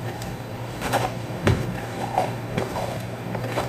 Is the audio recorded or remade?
remade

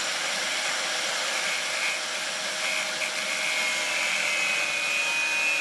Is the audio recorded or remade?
recorded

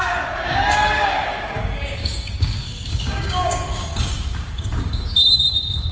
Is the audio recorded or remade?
remade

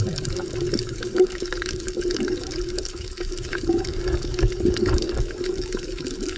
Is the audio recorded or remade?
remade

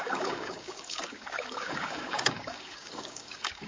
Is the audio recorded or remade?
remade